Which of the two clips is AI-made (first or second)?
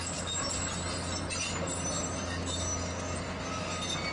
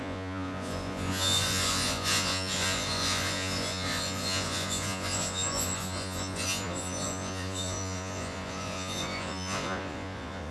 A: second